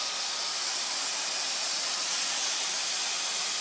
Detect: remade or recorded recorded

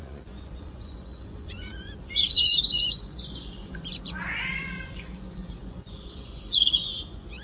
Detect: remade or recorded remade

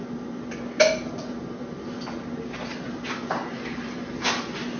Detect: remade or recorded recorded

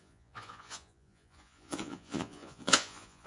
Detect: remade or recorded remade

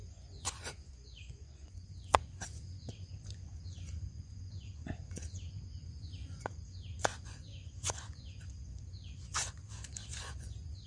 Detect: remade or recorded remade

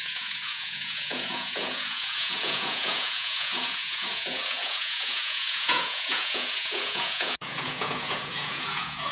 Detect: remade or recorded remade